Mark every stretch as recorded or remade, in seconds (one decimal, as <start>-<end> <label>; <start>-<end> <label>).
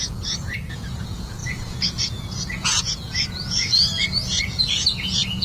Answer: 0.0-5.4 remade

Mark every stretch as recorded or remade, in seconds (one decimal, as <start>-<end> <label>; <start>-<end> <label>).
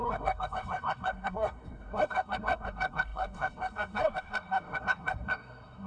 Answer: 0.0-5.9 remade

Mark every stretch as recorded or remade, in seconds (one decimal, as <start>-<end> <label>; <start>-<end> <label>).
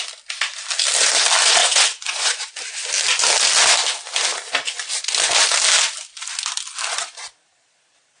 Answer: 0.0-1.6 recorded; 1.6-2.5 remade; 2.5-8.2 recorded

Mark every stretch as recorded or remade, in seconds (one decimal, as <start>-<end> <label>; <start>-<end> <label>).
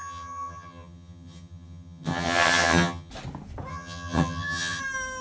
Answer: 0.0-3.1 remade; 3.1-3.7 recorded; 3.7-4.8 remade; 4.8-5.2 recorded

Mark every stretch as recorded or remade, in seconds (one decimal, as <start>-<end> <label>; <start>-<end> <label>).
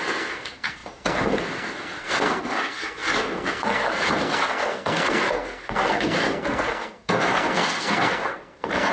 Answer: 0.0-8.9 remade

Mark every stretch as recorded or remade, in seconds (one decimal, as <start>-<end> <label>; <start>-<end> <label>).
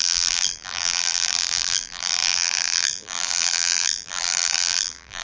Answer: 0.0-5.2 remade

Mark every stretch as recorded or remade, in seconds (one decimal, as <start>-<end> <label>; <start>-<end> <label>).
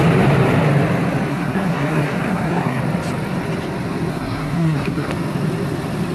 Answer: 0.0-1.3 recorded; 1.3-2.8 remade; 2.8-4.1 recorded; 4.1-5.1 remade; 5.1-6.1 recorded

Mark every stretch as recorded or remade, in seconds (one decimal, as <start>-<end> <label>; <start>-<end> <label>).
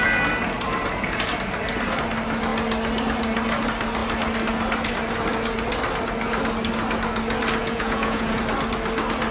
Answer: 0.0-7.6 recorded; 7.6-8.4 remade; 8.4-9.3 recorded